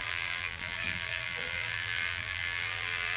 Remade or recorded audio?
remade